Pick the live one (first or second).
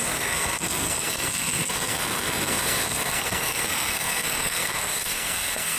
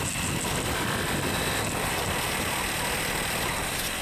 second